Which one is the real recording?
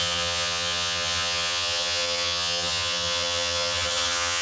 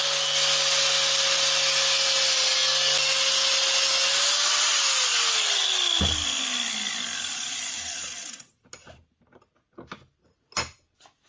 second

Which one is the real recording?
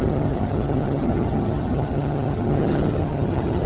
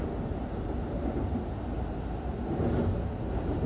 second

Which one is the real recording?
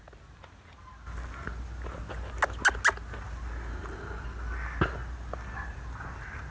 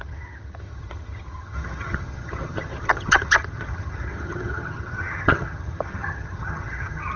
first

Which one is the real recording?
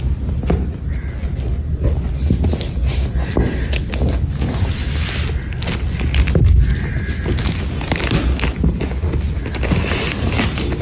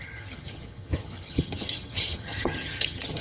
first